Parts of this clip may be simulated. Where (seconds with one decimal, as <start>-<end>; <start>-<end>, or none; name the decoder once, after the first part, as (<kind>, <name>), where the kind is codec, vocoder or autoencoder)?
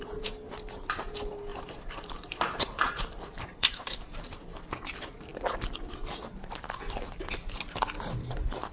1.5-4.3 (vocoder, BigVGAN v2)